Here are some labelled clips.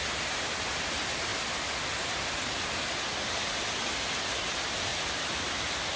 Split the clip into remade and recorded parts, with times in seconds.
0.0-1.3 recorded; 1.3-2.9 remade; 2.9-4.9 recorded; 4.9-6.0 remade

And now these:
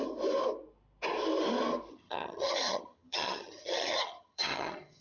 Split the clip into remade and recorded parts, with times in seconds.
0.0-1.9 recorded; 1.9-5.0 remade